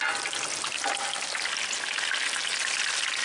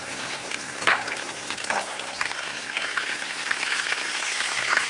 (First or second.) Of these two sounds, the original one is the first